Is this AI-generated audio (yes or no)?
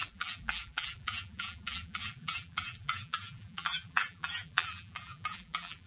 yes